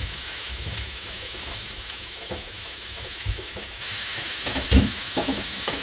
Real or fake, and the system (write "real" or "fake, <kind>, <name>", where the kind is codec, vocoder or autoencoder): fake, autoencoder, DAC-VAE